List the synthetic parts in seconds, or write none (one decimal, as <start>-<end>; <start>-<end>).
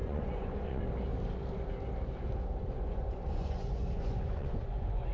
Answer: 0.0-0.8; 2.6-5.1